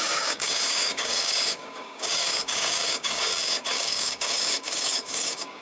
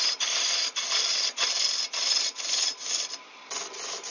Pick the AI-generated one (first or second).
first